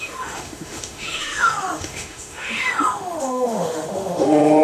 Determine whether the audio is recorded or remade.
remade